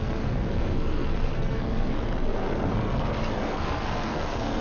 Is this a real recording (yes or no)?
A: no